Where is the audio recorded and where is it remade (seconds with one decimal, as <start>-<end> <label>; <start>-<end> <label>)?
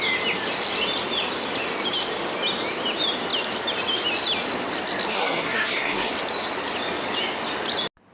0.0-5.1 recorded; 5.1-6.1 remade; 6.1-8.1 recorded